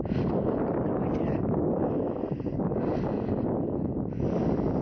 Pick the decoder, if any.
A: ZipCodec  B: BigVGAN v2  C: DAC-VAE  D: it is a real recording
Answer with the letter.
D